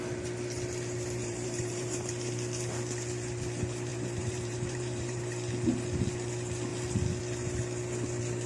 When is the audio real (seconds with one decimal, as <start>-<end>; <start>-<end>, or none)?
0.0-1.2; 2.1-3.9; 5.2-8.5